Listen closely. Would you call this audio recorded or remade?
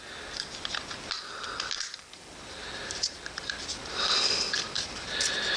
remade